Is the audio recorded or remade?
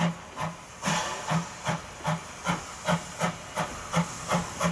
recorded